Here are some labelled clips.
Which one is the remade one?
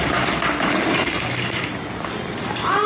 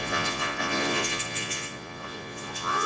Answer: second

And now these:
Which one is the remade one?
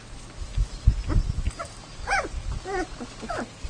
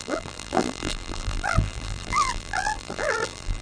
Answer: second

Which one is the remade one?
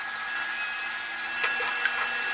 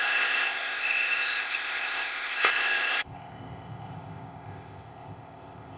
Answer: second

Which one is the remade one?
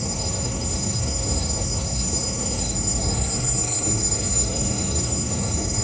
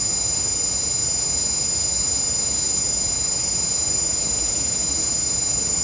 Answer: first